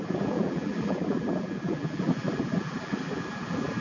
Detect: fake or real fake